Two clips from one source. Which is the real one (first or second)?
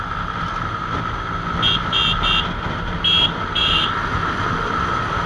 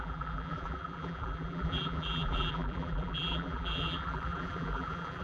first